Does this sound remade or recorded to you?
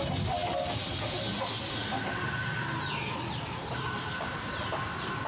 recorded